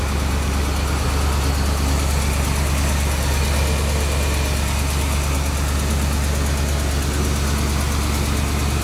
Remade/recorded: recorded